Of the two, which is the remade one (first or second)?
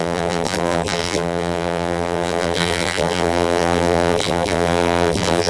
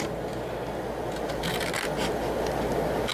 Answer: first